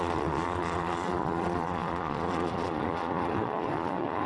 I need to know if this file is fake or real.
fake